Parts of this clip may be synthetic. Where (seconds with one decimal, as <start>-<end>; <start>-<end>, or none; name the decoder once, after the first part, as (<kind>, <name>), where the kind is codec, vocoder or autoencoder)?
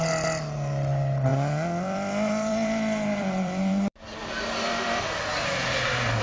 1.3-5.0 (vocoder, BigVGAN v2)